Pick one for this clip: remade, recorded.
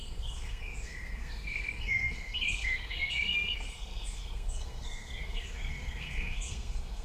remade